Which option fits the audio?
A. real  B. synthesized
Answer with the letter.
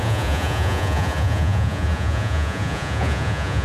B